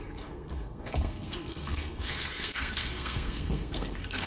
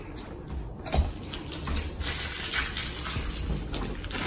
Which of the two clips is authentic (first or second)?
second